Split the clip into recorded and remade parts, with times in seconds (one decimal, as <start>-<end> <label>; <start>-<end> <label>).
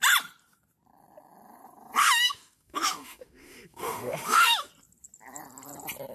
0.0-2.0 recorded; 2.0-4.7 remade; 4.7-6.1 recorded